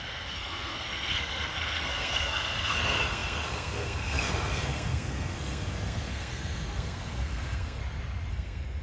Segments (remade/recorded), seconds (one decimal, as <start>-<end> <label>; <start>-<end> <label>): 0.0-7.8 remade; 7.8-8.3 recorded; 8.3-8.8 remade